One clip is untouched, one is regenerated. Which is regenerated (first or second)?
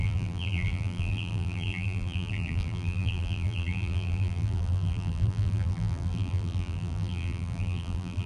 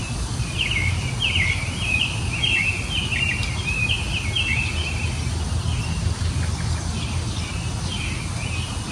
first